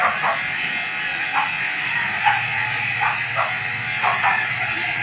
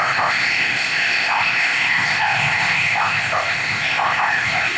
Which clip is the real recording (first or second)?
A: first